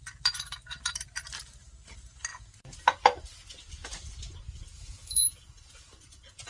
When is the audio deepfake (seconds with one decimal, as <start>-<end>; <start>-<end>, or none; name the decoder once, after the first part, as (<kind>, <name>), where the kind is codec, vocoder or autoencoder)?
2.3-2.8 (vocoder, Vocos); 3.8-6.5

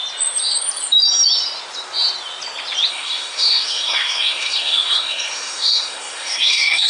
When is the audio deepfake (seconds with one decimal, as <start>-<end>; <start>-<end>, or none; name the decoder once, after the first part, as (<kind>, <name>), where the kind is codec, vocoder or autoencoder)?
2.9-6.9 (codec, SNAC)